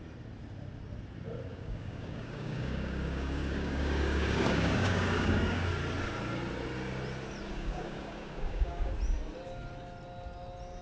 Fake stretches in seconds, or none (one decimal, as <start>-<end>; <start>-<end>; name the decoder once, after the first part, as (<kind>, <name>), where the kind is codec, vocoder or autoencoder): 1.5-5.7 (codec, DAC); 7.5-8.9